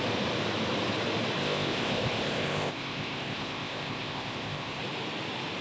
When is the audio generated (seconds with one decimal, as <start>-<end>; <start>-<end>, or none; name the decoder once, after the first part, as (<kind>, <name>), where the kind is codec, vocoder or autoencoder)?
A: 1.4-4.8 (codec, ZipCodec)